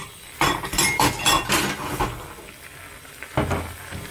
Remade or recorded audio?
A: recorded